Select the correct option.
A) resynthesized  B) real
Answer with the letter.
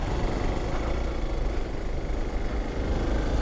B